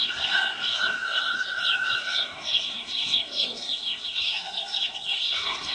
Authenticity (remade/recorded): remade